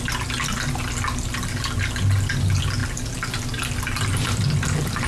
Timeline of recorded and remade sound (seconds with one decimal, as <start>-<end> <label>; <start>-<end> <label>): 0.0-5.1 recorded